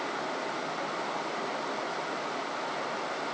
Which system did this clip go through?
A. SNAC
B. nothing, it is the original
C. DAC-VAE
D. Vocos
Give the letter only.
B